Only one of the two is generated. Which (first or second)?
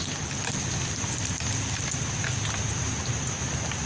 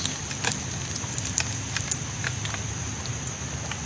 first